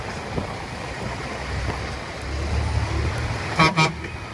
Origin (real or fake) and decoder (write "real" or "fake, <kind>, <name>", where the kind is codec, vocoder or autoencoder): real